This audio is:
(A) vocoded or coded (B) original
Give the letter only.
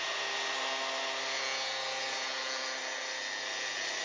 B